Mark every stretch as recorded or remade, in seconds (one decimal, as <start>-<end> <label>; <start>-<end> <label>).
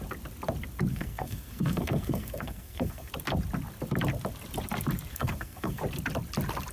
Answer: 0.0-0.9 recorded; 0.9-3.1 remade; 3.1-5.1 recorded; 5.1-5.8 remade; 5.8-6.7 recorded